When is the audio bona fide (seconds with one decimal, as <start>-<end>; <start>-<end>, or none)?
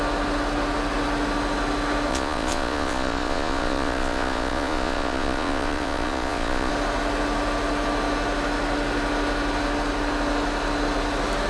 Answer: 0.0-2.1; 6.7-11.5